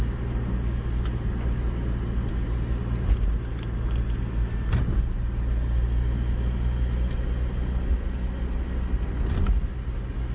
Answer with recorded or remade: recorded